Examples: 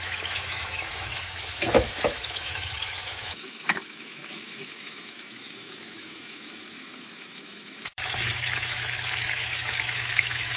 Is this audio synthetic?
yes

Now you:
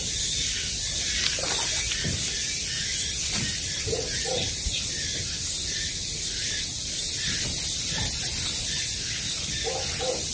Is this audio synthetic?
no